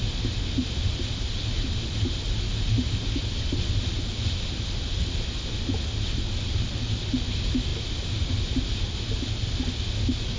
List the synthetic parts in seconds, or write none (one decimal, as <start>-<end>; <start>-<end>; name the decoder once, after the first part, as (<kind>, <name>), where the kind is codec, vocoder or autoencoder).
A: none